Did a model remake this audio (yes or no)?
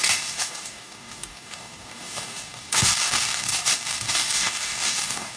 yes